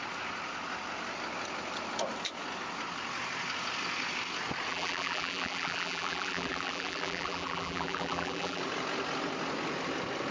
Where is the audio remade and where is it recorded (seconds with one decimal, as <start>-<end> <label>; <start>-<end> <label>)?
0.0-4.7 recorded; 4.7-8.6 remade; 8.6-10.3 recorded